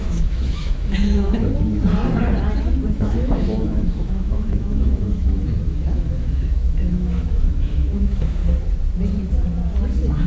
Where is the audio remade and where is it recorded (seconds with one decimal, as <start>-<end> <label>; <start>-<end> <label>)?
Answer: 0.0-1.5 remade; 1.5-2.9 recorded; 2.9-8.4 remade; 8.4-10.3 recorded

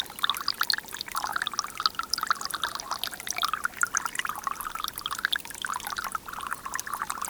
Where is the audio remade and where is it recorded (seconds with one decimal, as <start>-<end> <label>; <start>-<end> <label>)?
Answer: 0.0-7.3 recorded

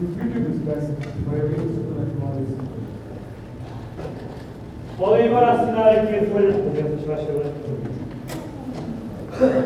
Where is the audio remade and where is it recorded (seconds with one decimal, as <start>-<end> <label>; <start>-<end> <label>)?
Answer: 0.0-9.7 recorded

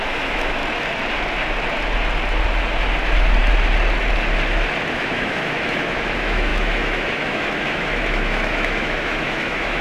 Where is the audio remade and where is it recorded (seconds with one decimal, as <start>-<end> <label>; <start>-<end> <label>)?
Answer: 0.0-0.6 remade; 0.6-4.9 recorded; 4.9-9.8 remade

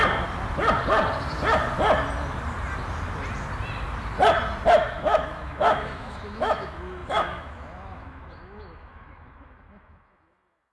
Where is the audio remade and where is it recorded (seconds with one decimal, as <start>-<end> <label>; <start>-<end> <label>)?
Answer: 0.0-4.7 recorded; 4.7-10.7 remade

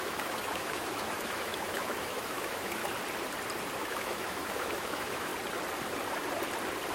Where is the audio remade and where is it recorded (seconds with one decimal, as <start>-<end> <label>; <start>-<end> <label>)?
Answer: 0.0-2.8 remade; 2.8-3.8 recorded; 3.8-5.3 remade; 5.3-6.9 recorded